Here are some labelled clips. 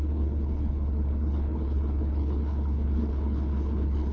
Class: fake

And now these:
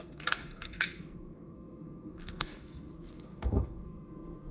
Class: fake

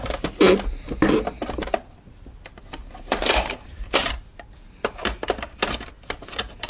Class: real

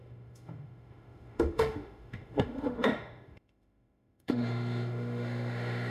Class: fake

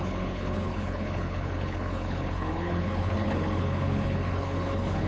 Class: fake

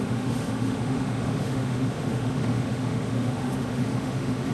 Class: fake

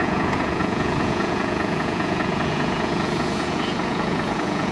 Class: fake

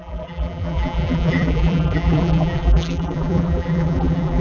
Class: fake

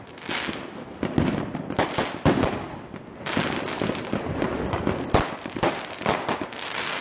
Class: real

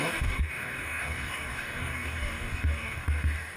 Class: fake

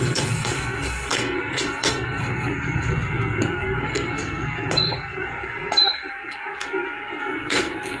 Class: fake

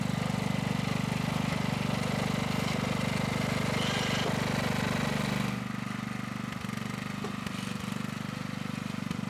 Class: real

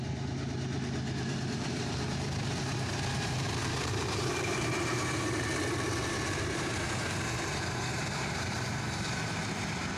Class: fake